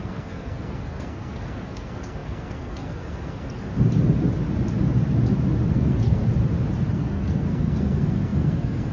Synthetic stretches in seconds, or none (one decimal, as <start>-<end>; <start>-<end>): 0.0-3.7; 5.7-6.2; 6.9-8.9

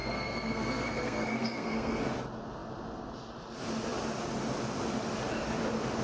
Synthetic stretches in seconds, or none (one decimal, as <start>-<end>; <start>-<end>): 0.0-2.0

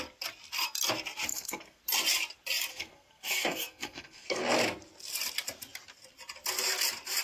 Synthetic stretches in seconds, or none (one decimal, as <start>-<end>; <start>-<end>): 1.3-1.8; 2.7-4.4

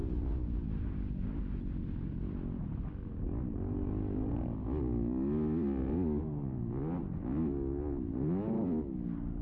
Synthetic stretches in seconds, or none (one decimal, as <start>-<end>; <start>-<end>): none

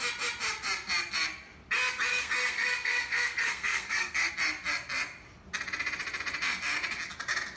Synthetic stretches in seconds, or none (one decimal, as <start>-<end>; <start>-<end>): 2.1-4.3

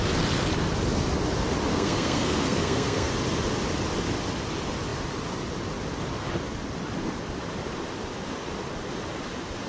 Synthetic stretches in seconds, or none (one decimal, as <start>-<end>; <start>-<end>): 1.7-3.1